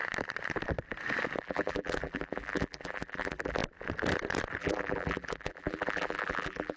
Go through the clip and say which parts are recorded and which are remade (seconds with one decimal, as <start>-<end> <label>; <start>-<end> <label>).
0.0-1.4 recorded; 1.4-3.6 remade; 3.6-4.6 recorded; 4.6-6.8 remade